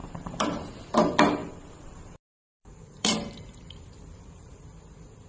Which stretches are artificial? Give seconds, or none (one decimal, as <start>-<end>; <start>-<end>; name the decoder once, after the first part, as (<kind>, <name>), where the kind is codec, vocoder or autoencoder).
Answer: 0.0-0.7 (vocoder, BigVGAN v2); 1.4-4.6